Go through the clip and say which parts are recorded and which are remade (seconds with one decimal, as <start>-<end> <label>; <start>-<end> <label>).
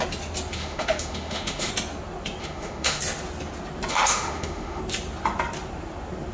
0.0-0.5 recorded; 0.5-1.7 remade; 1.7-2.4 recorded; 2.4-3.0 remade; 3.0-3.9 recorded; 3.9-4.8 remade; 4.8-6.3 recorded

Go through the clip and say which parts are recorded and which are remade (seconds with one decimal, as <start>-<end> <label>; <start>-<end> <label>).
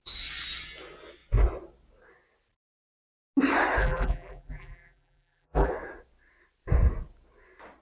0.0-3.8 recorded; 3.8-5.7 remade; 5.7-7.8 recorded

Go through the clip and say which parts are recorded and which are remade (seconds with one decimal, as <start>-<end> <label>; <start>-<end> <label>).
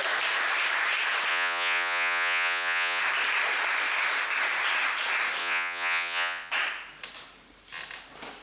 0.0-1.3 recorded; 1.3-3.0 remade; 3.0-5.4 recorded; 5.4-6.5 remade; 6.5-8.4 recorded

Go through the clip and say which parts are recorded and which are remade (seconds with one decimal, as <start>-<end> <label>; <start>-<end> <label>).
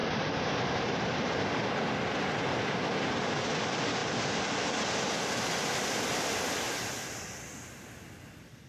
0.0-1.3 remade; 1.3-8.7 recorded